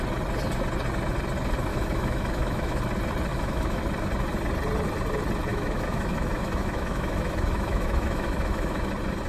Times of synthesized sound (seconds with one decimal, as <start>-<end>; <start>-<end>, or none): 1.7-2.8; 3.3-3.8; 5.5-8.9